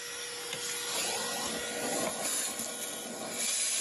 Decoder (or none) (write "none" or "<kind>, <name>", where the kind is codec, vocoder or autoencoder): none